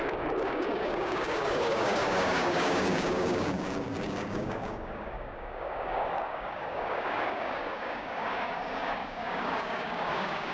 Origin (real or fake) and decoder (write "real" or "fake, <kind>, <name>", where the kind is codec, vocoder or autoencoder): fake, codec, DAC